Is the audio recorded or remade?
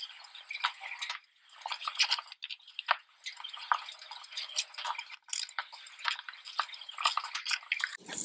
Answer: recorded